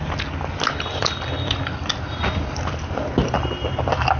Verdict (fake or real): real